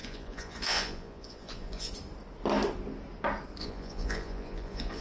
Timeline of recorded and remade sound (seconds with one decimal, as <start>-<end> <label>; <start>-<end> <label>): 0.0-1.9 remade; 1.9-3.6 recorded; 3.6-5.0 remade